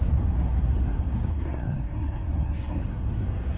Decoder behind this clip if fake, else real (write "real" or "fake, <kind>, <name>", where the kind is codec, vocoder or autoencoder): fake, codec, SNAC